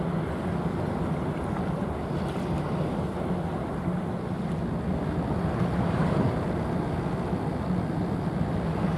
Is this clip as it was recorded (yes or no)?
yes